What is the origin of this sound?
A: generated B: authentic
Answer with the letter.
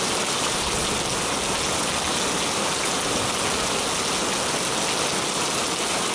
B